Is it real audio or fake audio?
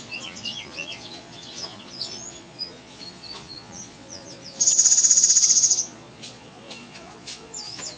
fake